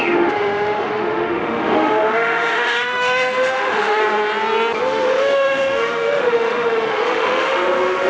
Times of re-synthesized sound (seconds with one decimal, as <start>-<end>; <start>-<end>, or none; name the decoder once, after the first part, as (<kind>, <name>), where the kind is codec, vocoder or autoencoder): 0.0-4.0 (autoencoder, DAC-VAE); 4.8-8.1

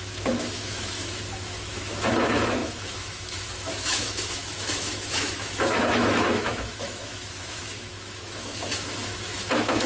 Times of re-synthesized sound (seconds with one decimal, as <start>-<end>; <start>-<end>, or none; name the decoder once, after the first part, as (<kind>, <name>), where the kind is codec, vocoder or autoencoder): 0.0-9.9 (autoencoder, DAC-VAE)

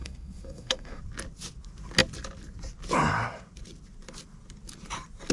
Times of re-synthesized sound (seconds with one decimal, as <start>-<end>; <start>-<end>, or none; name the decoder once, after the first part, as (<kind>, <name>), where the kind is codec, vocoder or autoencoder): 0.0-1.0 (autoencoder, DAC-VAE)

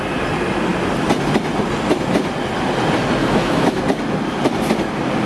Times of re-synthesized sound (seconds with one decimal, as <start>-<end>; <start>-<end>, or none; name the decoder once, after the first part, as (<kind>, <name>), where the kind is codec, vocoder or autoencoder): 3.2-3.8 (autoencoder, DAC-VAE)